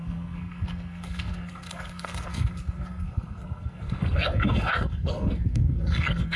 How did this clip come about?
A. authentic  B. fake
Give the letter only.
B